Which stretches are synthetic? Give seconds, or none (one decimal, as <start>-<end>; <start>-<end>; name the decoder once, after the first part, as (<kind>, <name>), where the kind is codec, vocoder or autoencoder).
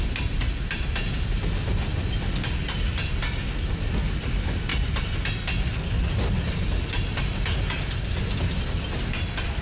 none